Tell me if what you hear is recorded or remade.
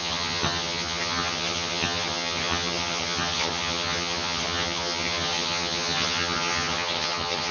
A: remade